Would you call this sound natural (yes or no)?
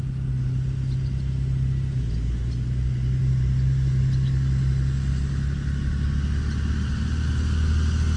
yes